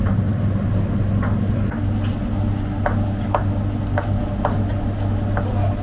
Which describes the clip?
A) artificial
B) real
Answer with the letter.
B